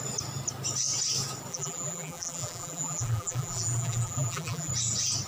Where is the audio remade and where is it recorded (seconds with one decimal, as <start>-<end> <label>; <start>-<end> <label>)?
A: 0.0-1.5 recorded; 1.5-4.7 remade; 4.7-5.3 recorded